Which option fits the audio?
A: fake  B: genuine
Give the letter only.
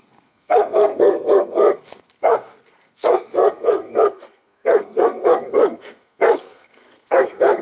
A